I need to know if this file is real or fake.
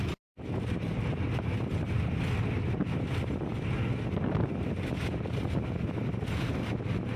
real